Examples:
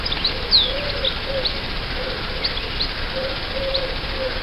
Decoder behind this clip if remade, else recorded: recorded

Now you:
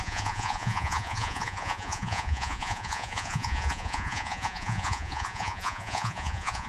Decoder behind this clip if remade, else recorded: remade, vocoder, Vocos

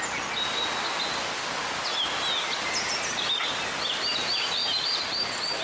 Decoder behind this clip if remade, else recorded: recorded